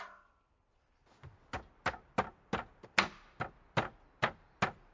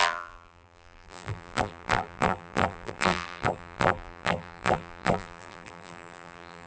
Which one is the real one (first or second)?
first